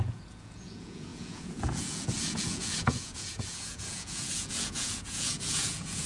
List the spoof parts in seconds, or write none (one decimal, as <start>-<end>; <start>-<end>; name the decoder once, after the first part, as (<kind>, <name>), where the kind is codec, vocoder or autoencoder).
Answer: 0.0-6.1 (vocoder, Vocos)